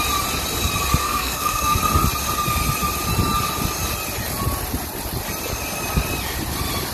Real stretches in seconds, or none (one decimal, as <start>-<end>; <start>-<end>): 0.0-1.0; 1.8-6.9

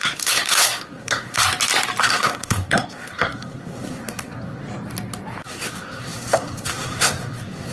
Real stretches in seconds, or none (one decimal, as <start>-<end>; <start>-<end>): 1.4-2.0; 4.6-5.4